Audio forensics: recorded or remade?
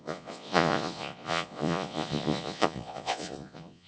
remade